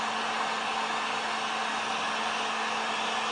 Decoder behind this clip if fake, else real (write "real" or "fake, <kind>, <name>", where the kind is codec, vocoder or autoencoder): real